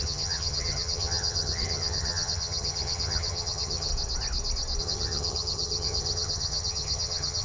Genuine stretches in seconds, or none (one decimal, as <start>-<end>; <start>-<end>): 3.9-4.8